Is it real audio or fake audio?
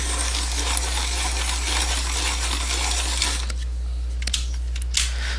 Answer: real